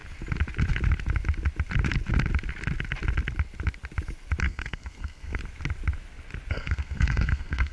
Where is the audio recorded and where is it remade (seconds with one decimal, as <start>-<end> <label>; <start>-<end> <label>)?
0.0-4.4 recorded; 4.4-5.4 remade; 5.4-6.5 recorded; 6.5-7.7 remade